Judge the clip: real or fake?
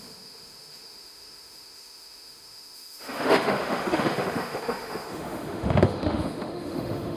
fake